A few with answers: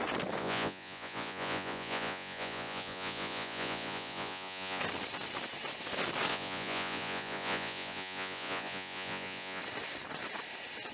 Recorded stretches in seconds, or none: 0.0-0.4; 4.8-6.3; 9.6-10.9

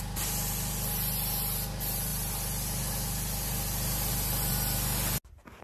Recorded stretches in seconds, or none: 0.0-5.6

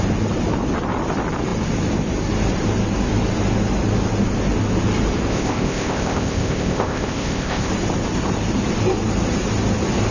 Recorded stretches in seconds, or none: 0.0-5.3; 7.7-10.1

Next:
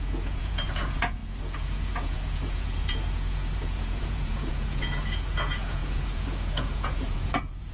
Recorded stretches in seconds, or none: none